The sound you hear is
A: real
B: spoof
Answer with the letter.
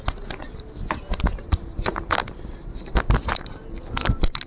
A